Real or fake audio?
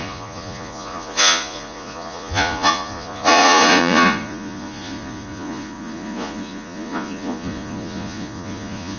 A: fake